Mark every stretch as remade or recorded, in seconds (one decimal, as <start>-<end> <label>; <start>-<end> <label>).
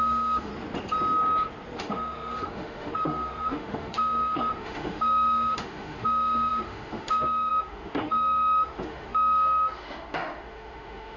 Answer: 0.0-0.5 remade; 0.5-1.8 recorded; 1.8-11.2 remade